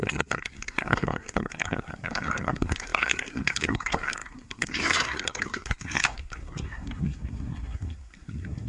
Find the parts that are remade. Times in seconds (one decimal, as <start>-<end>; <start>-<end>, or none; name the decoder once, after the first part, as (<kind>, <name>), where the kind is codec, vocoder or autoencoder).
0.0-8.7 (codec, SNAC)